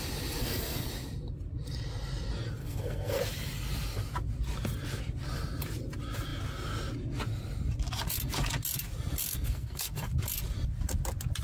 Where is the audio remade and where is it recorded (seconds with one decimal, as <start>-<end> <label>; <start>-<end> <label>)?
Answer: 0.0-0.4 recorded; 0.4-0.9 remade; 0.9-2.6 recorded; 2.6-3.2 remade; 3.2-9.3 recorded; 9.3-10.1 remade; 10.1-11.4 recorded